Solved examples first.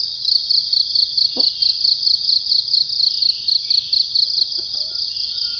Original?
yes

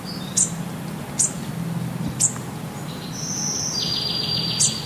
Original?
yes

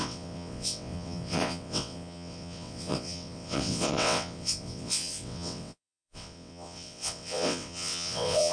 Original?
no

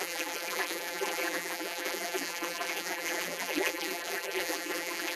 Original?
no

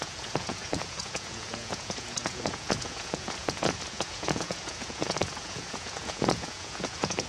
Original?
no